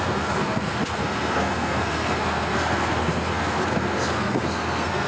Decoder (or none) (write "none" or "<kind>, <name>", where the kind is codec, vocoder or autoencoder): codec, SNAC